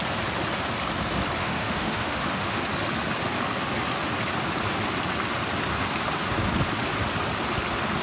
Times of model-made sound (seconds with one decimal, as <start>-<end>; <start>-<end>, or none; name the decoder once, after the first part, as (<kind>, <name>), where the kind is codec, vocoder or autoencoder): 1.4-2.6 (autoencoder, DAC-VAE)